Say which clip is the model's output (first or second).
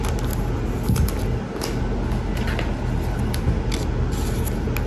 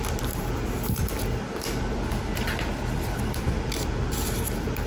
second